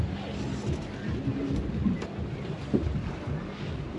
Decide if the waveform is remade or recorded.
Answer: recorded